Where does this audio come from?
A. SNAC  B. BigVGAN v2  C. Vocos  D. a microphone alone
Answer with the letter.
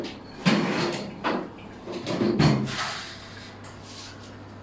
D